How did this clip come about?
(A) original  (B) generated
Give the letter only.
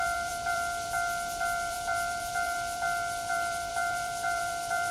B